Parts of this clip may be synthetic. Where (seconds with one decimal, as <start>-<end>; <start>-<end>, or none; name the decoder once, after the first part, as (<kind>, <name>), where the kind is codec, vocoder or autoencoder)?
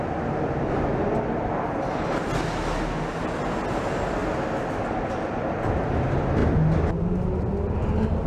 none